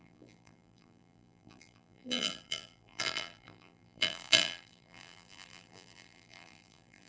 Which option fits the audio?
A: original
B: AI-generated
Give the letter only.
B